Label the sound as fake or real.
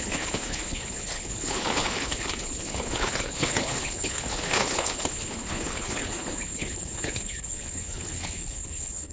fake